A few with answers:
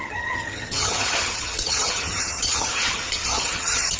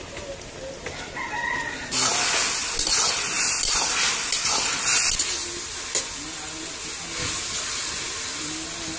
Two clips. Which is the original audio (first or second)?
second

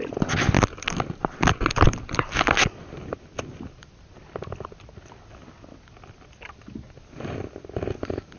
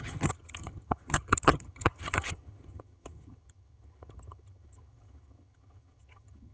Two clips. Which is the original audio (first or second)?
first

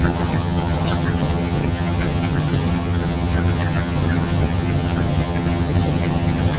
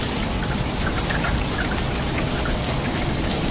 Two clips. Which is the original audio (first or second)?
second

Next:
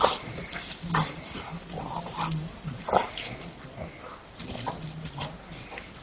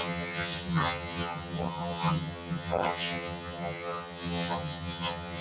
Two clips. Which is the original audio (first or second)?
first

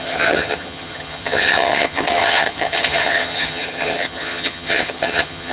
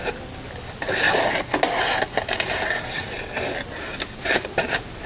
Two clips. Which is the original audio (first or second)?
second